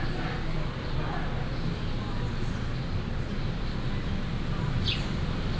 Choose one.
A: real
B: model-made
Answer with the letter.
A